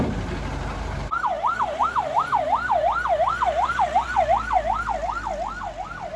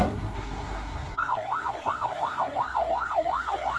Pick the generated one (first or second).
second